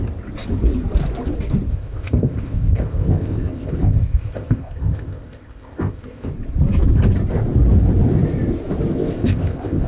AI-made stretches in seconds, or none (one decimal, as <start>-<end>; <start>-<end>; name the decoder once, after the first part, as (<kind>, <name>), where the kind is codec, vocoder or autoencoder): 1.7-6.3 (codec, ZipCodec); 8.9-9.9